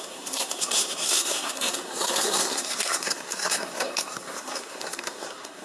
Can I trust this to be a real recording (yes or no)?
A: no